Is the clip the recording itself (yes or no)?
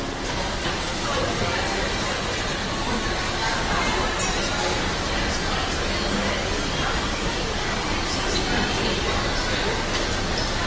yes